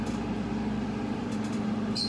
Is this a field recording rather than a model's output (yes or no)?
yes